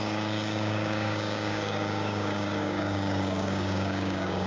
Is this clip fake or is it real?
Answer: fake